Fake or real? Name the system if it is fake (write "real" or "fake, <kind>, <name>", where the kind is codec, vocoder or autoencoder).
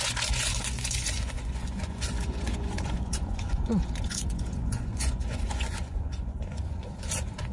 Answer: fake, vocoder, Vocos